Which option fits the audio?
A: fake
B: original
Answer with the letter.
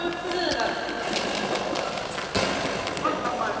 B